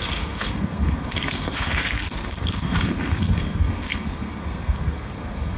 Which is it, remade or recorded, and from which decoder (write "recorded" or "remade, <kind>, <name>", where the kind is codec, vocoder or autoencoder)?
remade, codec, SNAC